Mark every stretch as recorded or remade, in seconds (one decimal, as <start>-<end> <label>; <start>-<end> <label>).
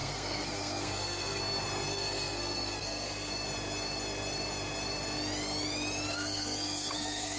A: 0.0-1.4 remade; 1.4-1.9 recorded; 1.9-3.3 remade; 3.3-6.1 recorded; 6.1-7.4 remade